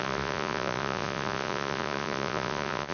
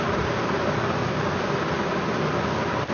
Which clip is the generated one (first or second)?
first